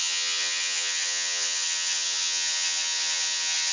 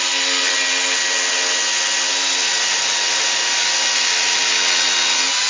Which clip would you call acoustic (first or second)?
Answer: second